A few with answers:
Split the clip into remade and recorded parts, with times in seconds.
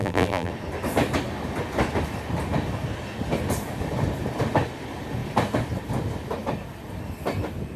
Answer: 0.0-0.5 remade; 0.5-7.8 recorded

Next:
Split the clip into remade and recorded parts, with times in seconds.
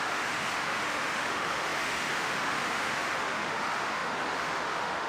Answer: 0.0-5.1 remade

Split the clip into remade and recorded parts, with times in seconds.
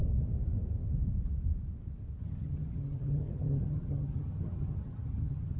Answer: 0.0-2.2 recorded; 2.2-5.6 remade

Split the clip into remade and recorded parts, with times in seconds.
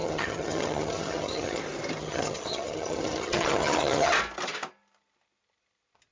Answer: 0.0-1.6 remade; 1.6-2.0 recorded; 2.0-4.1 remade; 4.1-6.1 recorded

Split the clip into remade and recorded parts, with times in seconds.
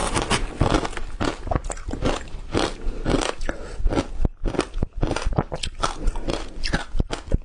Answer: 0.0-4.4 recorded; 4.4-5.8 remade; 5.8-7.4 recorded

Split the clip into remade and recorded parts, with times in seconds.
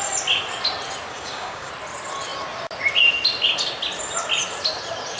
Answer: 0.0-1.1 recorded; 1.1-1.7 remade; 1.7-5.2 recorded